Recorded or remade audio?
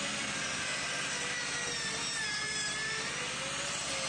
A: recorded